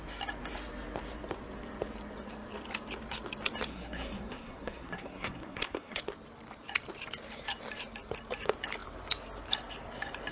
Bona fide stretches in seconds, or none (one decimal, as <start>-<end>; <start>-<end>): 0.0-3.7; 6.0-10.3

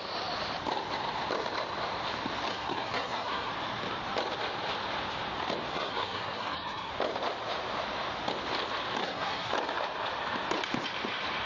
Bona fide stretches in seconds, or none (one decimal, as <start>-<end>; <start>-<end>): 0.0-2.5; 3.5-5.7; 6.9-9.0; 9.5-11.5

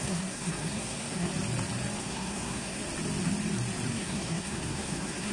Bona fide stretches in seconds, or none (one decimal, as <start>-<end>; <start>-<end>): 1.3-2.0; 2.8-3.9

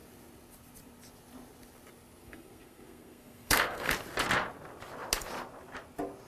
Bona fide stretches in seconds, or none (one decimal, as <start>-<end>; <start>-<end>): 0.0-2.2; 3.9-6.3

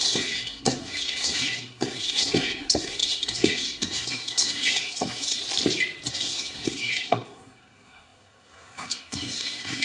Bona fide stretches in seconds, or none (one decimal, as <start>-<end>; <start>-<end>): 5.4-6.1

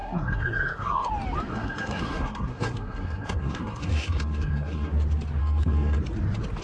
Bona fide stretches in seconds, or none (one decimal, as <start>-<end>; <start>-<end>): 1.1-1.5; 4.9-5.4; 6.0-6.6

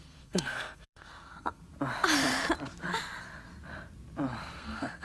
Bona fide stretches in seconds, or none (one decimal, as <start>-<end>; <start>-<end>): 1.6-4.6